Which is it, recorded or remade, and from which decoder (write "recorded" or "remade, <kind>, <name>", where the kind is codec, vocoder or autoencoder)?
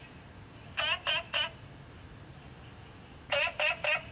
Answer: recorded